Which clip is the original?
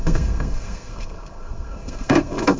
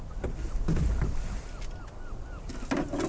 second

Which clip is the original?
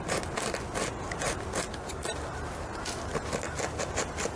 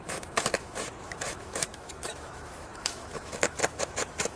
first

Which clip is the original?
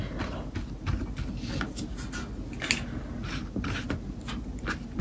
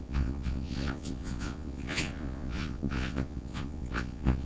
first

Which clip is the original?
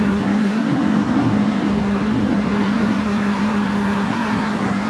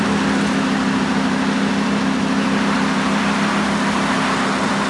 second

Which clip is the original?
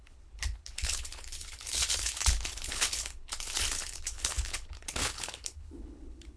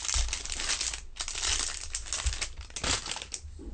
second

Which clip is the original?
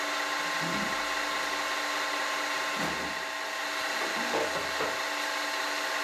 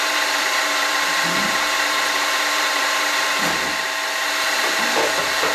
first